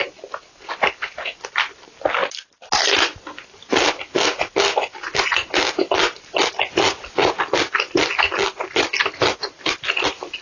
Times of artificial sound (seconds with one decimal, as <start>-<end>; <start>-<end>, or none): none